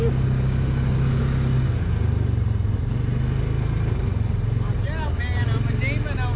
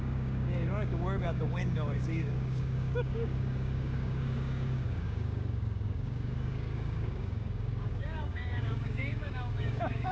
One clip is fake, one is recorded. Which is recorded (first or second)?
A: first